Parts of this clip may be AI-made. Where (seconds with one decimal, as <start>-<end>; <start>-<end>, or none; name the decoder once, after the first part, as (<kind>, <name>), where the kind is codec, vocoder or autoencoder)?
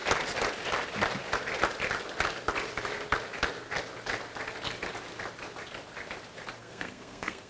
6.6-7.5 (codec, SNAC)